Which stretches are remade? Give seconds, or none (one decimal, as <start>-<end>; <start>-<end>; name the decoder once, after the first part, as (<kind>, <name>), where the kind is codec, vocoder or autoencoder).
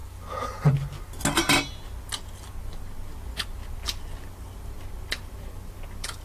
none